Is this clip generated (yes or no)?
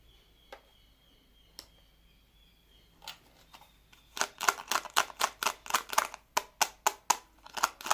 no